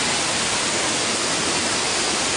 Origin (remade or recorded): recorded